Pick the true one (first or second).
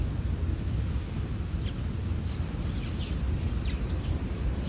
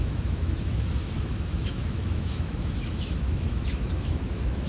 first